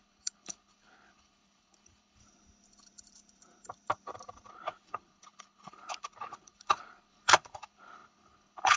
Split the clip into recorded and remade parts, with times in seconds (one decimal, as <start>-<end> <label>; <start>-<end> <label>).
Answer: 0.0-2.2 remade; 2.2-4.5 recorded; 4.5-8.8 remade